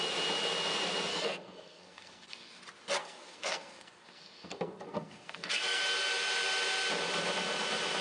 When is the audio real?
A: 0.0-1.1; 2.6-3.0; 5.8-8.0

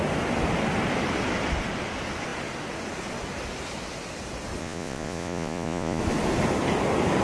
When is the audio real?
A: 0.0-4.6; 6.0-7.2

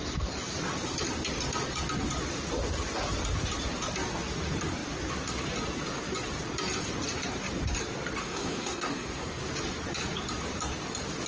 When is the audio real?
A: 0.0-8.2; 9.4-11.3

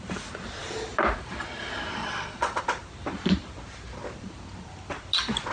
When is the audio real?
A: 0.0-2.0; 2.6-5.5

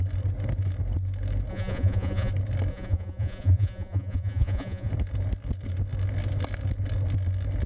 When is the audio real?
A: 0.0-1.5; 2.3-2.7; 4.9-7.7

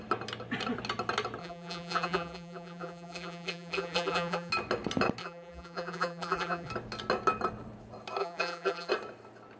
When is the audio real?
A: 0.0-1.4; 4.5-5.2; 6.7-8.2; 8.9-9.6

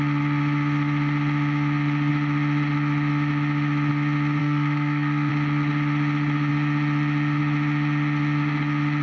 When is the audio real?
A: 0.0-4.4; 5.3-9.0

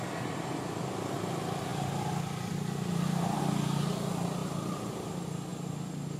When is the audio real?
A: 0.0-1.7; 3.4-4.4; 5.1-6.2